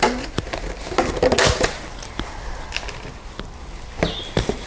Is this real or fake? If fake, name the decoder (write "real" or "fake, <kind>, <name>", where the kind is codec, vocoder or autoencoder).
real